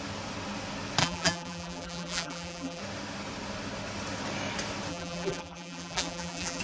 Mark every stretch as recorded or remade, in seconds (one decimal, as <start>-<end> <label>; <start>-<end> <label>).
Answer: 0.0-1.0 recorded; 1.0-2.8 remade; 2.8-4.9 recorded; 4.9-6.6 remade